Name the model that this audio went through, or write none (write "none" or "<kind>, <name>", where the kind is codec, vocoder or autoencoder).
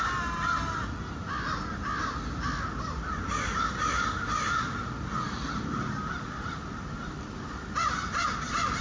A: none